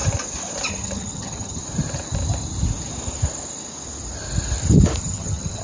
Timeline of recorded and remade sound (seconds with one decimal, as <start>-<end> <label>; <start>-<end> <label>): 0.0-0.7 recorded; 0.7-1.6 remade; 1.6-5.0 recorded; 5.0-5.6 remade